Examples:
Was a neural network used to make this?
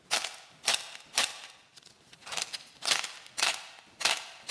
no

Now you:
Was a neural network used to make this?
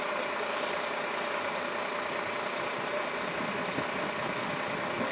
no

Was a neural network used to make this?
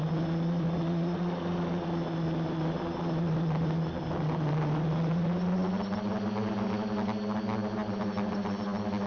no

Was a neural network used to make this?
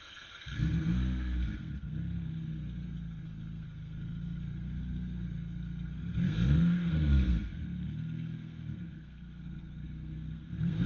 yes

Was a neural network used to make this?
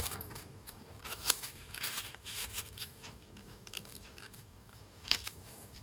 yes